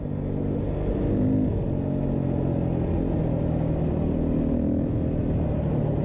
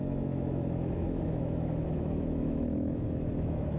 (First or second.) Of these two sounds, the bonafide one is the first